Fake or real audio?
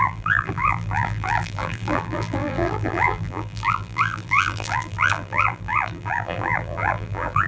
fake